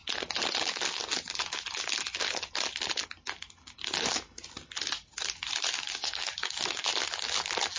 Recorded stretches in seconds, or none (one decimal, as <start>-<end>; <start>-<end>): 0.0-0.6; 1.0-5.7; 6.9-7.8